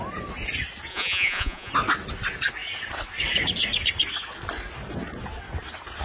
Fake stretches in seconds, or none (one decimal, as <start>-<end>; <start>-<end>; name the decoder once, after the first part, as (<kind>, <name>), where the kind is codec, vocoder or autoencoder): 0.9-1.7 (vocoder, Vocos)